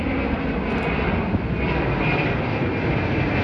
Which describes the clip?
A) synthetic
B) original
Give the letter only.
B